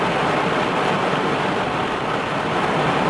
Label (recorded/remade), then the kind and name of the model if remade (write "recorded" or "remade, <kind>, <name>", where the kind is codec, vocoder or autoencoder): recorded